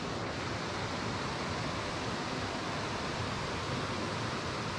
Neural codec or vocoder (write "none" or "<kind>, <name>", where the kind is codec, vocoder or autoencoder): none